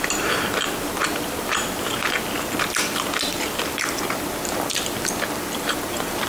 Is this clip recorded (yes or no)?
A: no